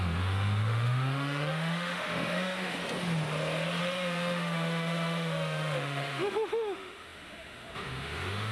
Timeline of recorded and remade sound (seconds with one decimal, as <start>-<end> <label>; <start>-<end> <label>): 0.0-2.8 remade; 2.8-3.8 recorded; 3.8-8.5 remade